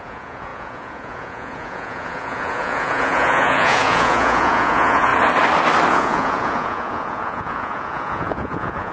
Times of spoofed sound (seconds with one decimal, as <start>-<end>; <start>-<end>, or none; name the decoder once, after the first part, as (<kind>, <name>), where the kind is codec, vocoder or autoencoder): 0.0-5.1 (vocoder, Vocos); 5.9-8.9